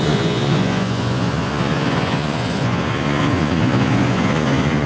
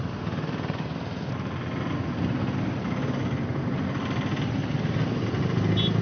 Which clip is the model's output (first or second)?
first